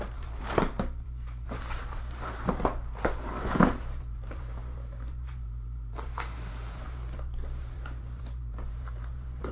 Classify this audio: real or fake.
fake